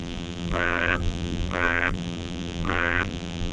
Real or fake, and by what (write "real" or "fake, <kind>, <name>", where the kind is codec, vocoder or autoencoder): fake, vocoder, BigVGAN v2